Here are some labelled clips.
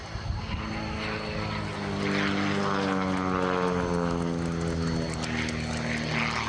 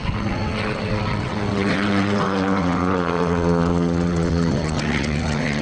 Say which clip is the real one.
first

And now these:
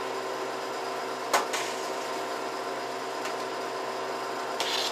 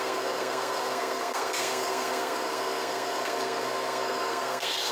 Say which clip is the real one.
first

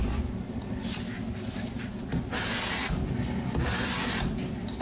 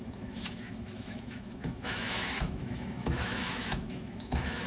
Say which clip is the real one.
first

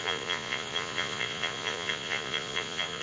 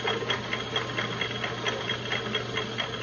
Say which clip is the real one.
second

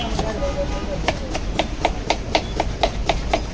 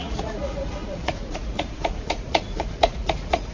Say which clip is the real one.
first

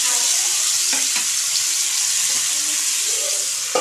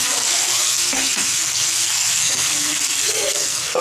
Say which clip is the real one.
first